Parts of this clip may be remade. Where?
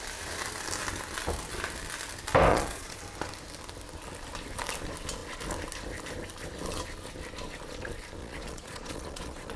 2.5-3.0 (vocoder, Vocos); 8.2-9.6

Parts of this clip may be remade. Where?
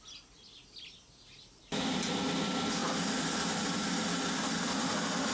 none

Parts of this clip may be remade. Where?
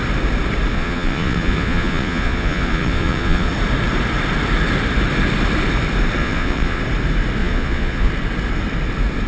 0.7-3.5 (vocoder, Vocos); 6.2-6.8; 7.4-8.1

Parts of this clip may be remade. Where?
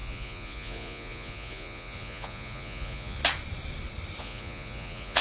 0.0-3.2 (vocoder, Vocos); 4.2-5.2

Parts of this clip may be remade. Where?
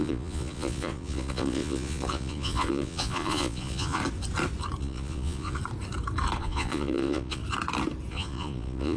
0.0-4.0 (vocoder, Vocos); 4.8-5.6; 6.4-7.4; 8.1-9.0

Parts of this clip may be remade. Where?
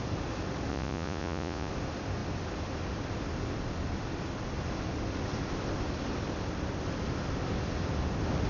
0.7-1.7 (vocoder, Vocos)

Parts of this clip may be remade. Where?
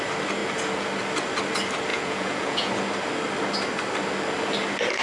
1.9-2.7 (vocoder, Vocos)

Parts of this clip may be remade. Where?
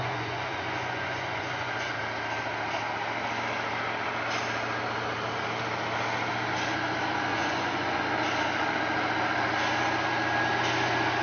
0.0-2.0 (vocoder, Vocos); 7.3-8.0